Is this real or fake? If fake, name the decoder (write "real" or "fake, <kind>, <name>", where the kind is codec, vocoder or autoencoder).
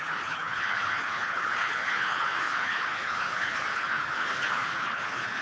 fake, codec, HILCodec